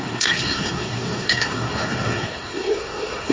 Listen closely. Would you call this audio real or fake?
fake